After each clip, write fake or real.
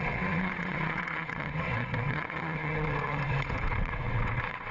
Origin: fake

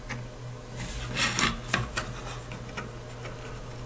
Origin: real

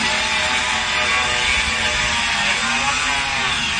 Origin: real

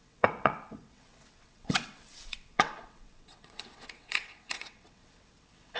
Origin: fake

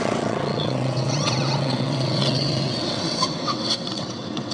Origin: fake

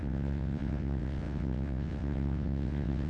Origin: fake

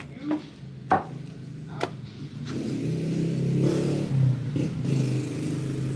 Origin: real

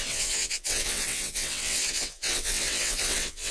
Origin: fake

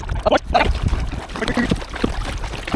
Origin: real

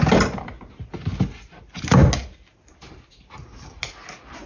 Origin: real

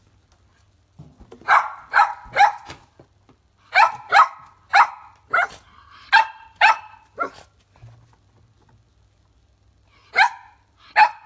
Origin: real